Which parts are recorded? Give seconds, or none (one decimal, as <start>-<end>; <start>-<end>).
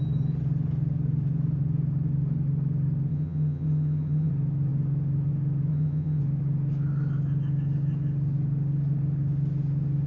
0.0-3.1; 4.3-5.7; 6.2-10.1